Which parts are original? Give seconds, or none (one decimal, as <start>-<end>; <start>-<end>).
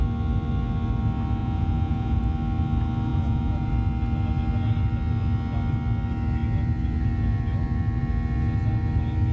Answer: 0.0-1.4; 2.2-3.1; 3.7-9.3